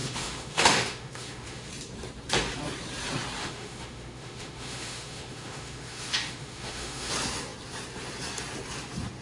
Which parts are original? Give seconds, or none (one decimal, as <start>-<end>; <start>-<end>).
1.7-3.4; 7.1-9.2